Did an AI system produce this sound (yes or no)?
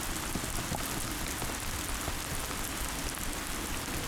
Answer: no